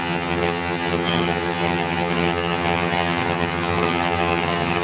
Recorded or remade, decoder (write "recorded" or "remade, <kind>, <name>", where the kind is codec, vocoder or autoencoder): remade, vocoder, HiFi-GAN